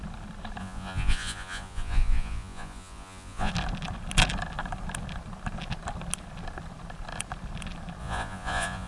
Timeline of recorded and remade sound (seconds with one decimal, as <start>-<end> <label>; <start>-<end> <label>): 0.0-0.6 recorded; 0.6-3.5 remade; 3.5-8.0 recorded; 8.0-8.9 remade